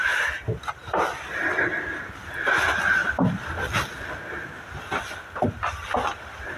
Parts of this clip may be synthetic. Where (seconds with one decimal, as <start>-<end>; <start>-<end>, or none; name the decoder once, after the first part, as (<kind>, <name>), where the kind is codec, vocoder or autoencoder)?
0.0-3.0 (vocoder, BigVGAN v2)